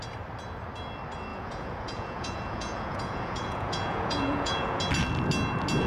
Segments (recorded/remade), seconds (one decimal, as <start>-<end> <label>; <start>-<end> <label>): 0.0-1.3 recorded; 1.3-4.8 remade; 4.8-5.9 recorded